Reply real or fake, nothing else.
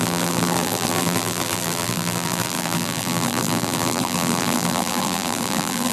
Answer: fake